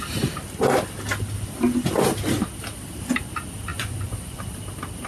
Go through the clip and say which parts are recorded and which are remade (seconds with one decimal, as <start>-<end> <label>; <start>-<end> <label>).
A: 0.0-3.7 recorded; 3.7-4.4 remade; 4.4-5.1 recorded